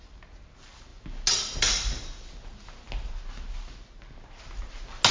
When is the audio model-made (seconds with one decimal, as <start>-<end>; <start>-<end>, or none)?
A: none

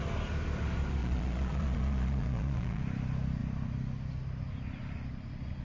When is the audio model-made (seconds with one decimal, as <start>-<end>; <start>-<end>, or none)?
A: 1.0-2.8

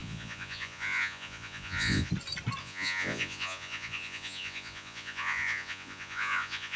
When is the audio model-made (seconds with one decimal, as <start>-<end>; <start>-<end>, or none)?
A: 0.0-2.1; 2.6-6.8